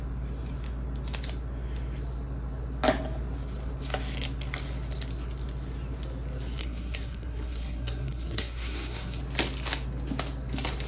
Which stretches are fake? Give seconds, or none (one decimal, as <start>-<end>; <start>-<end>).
6.6-9.2

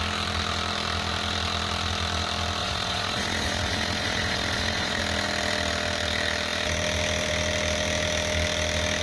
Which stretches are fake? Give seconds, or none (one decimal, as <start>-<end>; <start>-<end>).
2.6-5.0

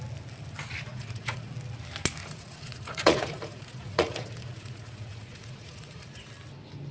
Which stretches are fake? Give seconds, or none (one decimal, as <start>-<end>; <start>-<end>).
0.9-1.5; 2.2-6.3

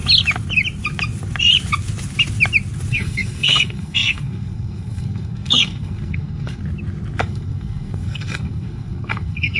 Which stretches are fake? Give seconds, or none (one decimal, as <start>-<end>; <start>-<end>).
2.9-6.6; 7.2-9.6

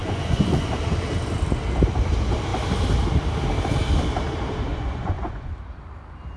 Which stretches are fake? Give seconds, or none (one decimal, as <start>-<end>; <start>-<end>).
0.0-0.7; 4.7-5.5

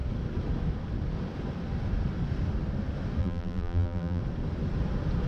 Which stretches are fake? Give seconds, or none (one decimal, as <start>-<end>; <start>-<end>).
3.2-4.2